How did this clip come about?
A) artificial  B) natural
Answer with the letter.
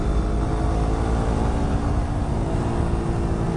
B